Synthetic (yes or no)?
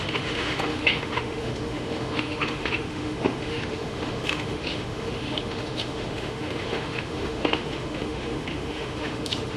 yes